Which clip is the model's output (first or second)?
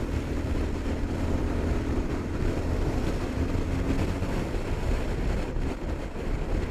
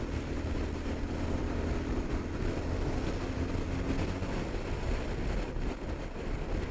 first